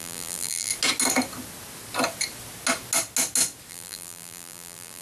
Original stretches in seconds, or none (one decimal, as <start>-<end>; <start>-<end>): 0.7-3.7